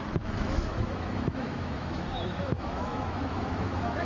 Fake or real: fake